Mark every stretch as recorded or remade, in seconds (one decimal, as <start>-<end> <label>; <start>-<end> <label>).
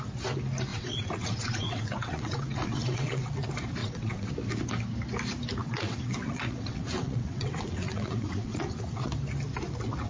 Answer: 0.0-0.7 recorded; 0.7-3.3 remade; 3.3-3.8 recorded; 3.8-4.3 remade; 4.3-5.6 recorded; 5.6-9.1 remade; 9.1-10.1 recorded